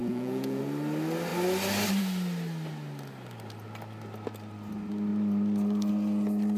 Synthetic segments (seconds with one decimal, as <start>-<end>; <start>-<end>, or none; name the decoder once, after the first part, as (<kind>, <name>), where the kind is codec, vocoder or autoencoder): 0.0-0.6 (vocoder, Vocos)